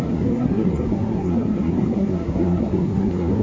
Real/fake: fake